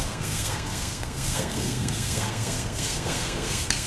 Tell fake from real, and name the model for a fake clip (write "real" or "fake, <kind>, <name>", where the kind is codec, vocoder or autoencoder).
fake, codec, SNAC